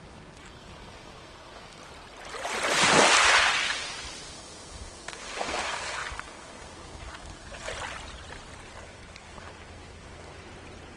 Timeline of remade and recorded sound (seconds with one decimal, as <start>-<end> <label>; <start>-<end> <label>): 0.0-1.8 remade; 1.8-4.3 recorded; 4.3-7.7 remade; 7.7-8.7 recorded; 8.7-10.3 remade; 10.3-11.0 recorded